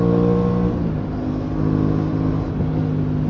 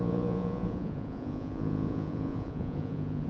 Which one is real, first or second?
first